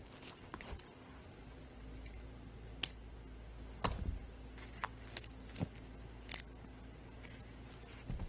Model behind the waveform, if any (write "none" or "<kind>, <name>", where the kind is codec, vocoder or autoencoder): none